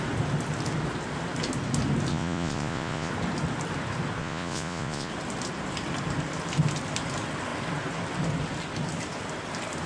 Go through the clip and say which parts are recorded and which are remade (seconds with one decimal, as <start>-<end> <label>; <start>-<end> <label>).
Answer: 0.0-2.1 recorded; 2.1-3.1 remade; 3.1-4.2 recorded; 4.2-5.1 remade; 5.1-9.9 recorded